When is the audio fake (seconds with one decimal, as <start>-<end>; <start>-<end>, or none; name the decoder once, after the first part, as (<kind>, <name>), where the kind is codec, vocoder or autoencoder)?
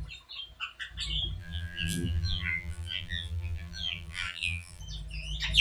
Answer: 1.4-4.8 (vocoder, BigVGAN v2)